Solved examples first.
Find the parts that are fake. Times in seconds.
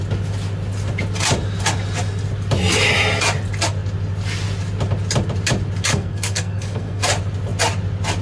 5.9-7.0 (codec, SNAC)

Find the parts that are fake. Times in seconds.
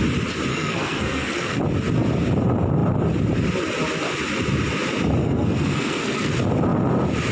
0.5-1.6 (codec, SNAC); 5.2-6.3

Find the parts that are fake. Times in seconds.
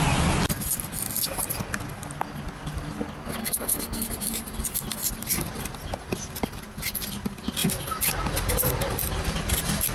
3.4-4.1 (codec, SNAC)